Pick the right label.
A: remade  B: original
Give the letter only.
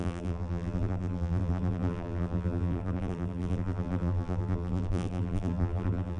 A